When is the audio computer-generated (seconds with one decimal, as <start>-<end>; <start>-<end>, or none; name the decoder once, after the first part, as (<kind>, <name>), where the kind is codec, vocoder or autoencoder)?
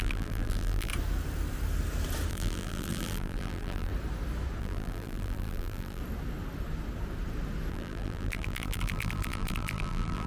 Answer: 0.0-0.9 (vocoder, BigVGAN v2); 2.3-3.9; 4.6-6.0; 7.7-10.3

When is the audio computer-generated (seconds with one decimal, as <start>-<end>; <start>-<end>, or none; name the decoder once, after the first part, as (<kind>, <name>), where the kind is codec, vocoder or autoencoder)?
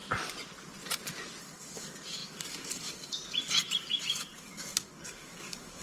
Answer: 1.4-5.8 (codec, DAC)